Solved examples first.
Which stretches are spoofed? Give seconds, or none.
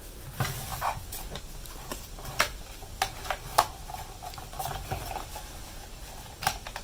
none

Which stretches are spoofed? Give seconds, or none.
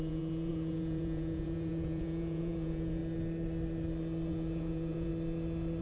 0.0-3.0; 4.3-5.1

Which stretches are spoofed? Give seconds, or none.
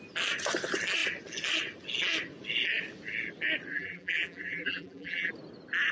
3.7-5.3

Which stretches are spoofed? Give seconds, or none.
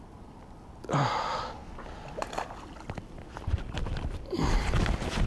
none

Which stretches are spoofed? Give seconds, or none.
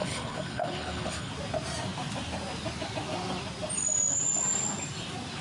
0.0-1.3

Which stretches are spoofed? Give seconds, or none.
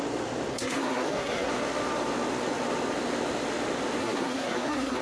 0.5-1.5; 4.0-5.0